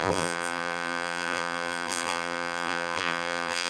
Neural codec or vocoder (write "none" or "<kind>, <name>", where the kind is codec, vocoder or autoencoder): vocoder, BigVGAN v2